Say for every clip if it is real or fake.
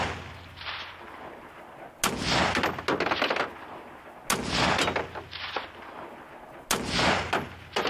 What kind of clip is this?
real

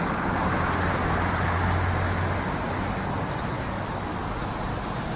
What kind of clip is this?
real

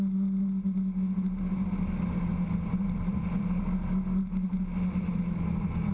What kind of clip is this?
real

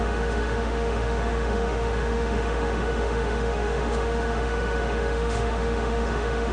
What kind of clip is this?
fake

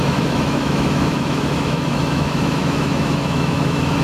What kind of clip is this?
fake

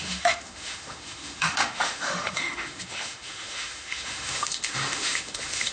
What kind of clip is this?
fake